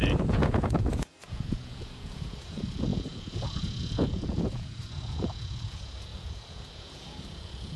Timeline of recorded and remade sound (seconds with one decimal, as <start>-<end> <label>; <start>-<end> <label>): 0.0-7.8 remade

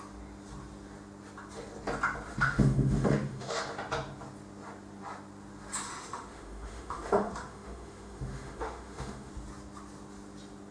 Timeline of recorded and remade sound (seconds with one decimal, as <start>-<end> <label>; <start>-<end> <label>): 0.0-2.3 recorded; 2.3-3.6 remade; 3.6-5.9 recorded; 5.9-9.3 remade; 9.3-10.7 recorded

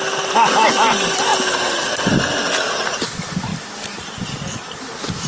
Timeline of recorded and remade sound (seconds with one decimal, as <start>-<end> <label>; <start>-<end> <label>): 0.0-5.3 recorded

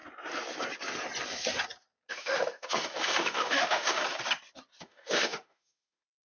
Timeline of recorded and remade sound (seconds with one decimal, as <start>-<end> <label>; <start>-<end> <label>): 0.0-2.1 recorded; 2.1-4.0 remade; 4.0-4.8 recorded; 4.8-6.2 remade

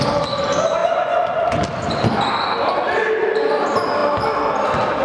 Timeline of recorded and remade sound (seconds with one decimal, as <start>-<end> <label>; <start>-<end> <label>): 0.0-0.8 recorded; 0.8-1.6 remade; 1.6-5.0 recorded

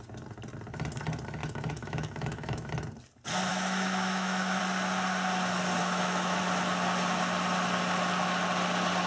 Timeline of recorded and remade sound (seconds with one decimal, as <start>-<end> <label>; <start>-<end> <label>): 0.0-1.4 recorded; 1.4-2.7 remade; 2.7-3.5 recorded; 3.5-4.6 remade; 4.6-5.8 recorded; 5.8-6.4 remade; 6.4-9.1 recorded